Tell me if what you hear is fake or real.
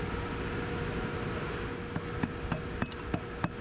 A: real